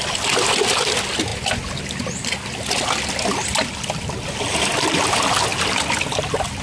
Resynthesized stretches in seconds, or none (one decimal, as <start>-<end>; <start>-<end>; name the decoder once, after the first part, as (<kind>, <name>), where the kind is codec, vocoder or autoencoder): none